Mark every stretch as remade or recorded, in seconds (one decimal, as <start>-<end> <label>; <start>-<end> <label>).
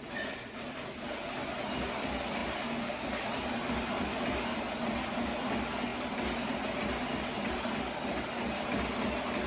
0.0-9.5 recorded